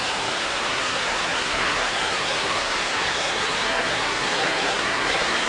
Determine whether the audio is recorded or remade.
remade